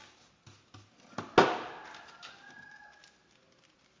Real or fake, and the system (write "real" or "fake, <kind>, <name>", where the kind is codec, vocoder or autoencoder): real